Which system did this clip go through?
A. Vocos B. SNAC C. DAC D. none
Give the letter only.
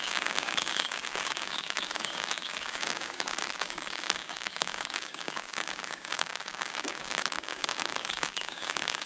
C